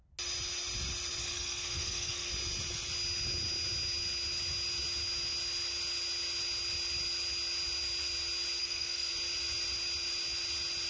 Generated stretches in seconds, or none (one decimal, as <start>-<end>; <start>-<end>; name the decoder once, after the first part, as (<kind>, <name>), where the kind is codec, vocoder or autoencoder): 1.2-2.3 (codec, SNAC); 8.6-9.1